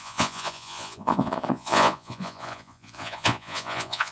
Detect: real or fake fake